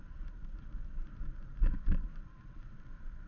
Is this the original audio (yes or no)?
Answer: no